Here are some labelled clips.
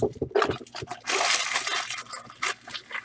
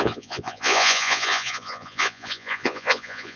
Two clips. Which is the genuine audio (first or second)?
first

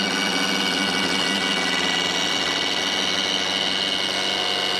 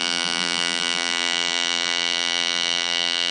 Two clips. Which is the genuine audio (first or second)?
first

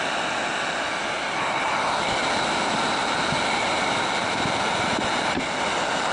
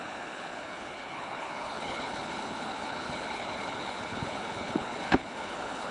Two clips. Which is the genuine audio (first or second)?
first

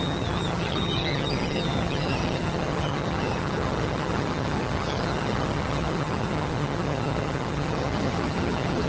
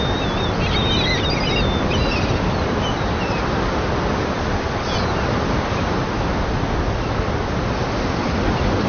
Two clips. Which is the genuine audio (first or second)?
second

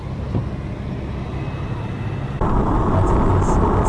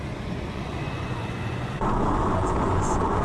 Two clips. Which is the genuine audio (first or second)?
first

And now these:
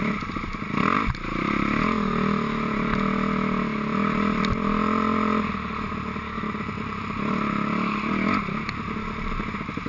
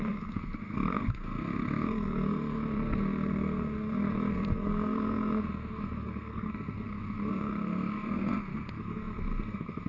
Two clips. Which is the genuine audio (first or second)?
first